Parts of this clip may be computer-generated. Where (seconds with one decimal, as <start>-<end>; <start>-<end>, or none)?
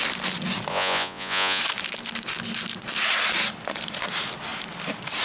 0.7-1.6